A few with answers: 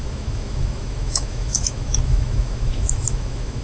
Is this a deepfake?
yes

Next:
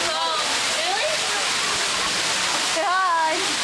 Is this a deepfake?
no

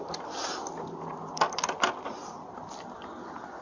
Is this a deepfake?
no